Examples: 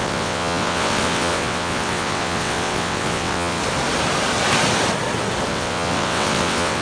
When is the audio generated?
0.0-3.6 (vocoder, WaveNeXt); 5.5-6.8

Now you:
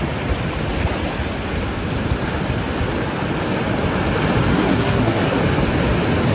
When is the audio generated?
4.5-5.4 (codec, SNAC)

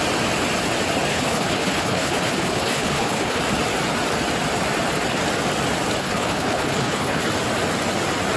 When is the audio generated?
1.1-3.4 (codec, HILCodec); 6.0-7.2